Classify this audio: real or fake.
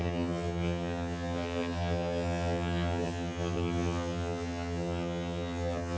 fake